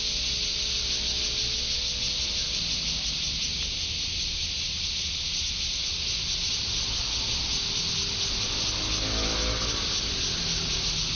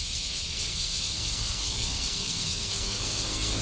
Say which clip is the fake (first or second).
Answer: second